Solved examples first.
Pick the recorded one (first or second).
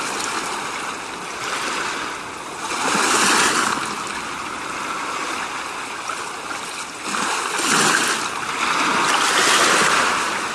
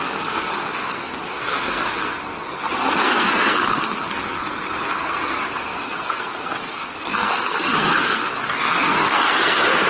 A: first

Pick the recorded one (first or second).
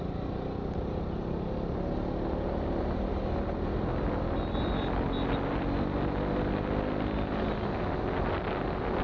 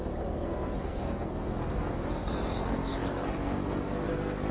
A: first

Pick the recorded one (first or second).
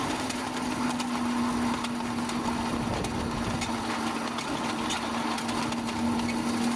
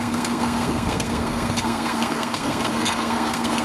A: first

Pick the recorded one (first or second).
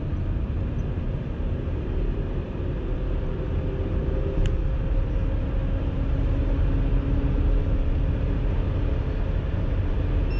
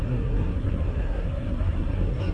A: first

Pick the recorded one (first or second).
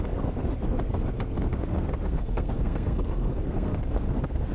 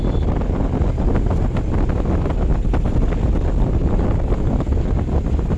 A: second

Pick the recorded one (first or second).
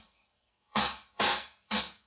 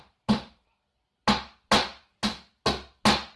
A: second